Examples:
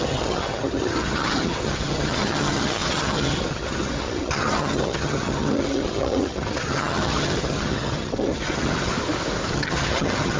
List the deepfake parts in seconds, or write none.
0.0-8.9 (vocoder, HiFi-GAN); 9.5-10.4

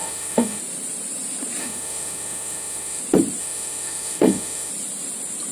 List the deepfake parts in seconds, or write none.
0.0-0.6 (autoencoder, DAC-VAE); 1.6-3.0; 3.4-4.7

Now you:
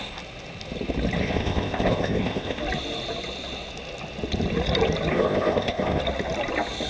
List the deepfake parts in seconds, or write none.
1.2-2.6 (codec, ZipCodec); 5.1-6.0

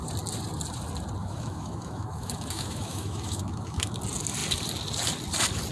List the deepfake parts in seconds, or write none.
1.2-3.9 (autoencoder, DAC-VAE)

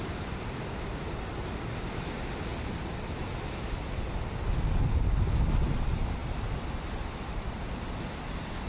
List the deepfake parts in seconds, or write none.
none

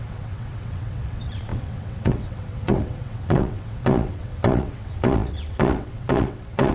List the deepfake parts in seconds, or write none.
0.0-6.7 (vocoder, WaveNeXt)

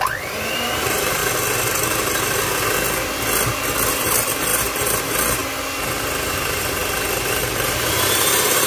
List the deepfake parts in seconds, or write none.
0.0-1.2 (vocoder, BigVGAN v2); 3.9-5.4; 6.3-6.8; 7.4-8.7